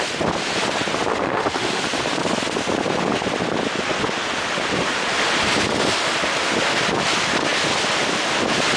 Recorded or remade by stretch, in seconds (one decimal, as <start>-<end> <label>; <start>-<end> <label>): 0.0-1.1 recorded; 1.1-1.8 remade; 1.8-8.8 recorded